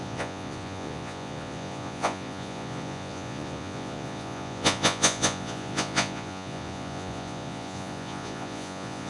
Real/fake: fake